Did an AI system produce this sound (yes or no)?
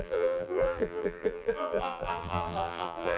yes